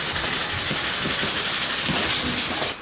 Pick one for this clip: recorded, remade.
recorded